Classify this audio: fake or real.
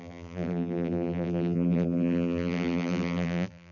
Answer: fake